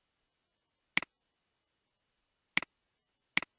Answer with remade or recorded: recorded